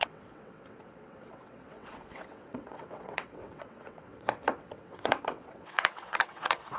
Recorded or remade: remade